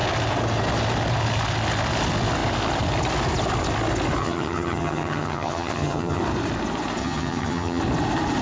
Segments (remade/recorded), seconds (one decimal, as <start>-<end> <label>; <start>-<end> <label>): 0.0-4.2 recorded; 4.2-6.2 remade; 6.2-7.0 recorded; 7.0-7.8 remade; 7.8-8.4 recorded